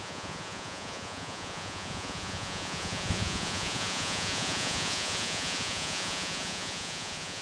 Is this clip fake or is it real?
fake